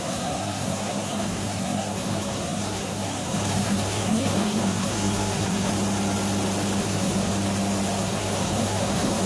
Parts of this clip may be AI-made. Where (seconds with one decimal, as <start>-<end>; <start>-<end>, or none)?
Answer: 0.0-5.7; 6.8-7.3; 8.0-9.3